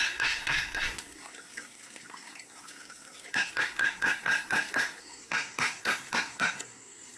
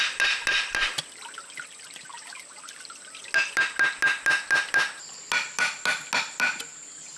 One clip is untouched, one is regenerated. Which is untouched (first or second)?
second